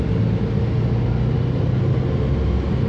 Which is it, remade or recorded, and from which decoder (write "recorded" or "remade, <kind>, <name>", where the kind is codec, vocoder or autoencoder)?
recorded